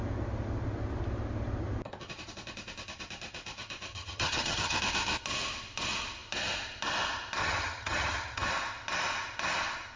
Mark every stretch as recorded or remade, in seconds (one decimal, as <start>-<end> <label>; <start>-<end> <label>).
0.0-3.9 recorded; 3.9-4.8 remade; 4.8-7.4 recorded; 7.4-8.5 remade; 8.5-10.0 recorded